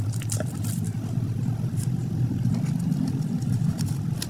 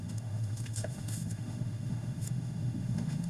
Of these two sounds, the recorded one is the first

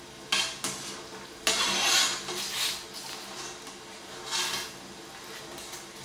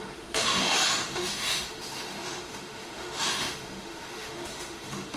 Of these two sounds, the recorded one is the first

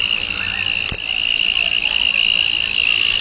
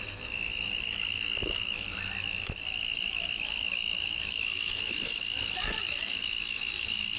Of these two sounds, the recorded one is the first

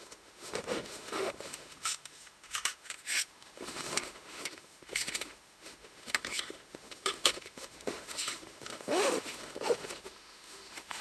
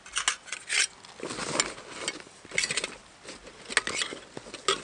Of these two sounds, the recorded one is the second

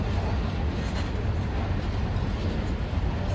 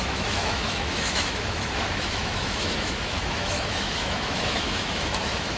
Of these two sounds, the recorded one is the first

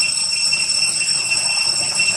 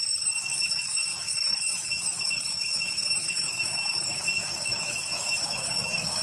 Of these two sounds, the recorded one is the first